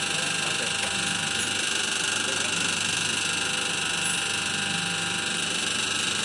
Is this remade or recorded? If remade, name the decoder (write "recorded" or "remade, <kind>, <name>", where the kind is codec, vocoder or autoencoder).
recorded